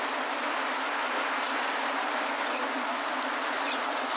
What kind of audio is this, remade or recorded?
recorded